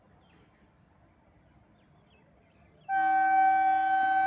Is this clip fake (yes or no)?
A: no